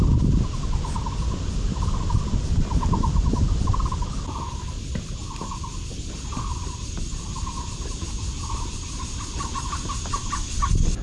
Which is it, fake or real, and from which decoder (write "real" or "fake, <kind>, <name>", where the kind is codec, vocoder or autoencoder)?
real